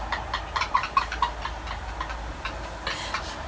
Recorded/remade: recorded